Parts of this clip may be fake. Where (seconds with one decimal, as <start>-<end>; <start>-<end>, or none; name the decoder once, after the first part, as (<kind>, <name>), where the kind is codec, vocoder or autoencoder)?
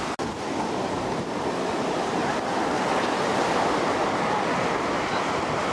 none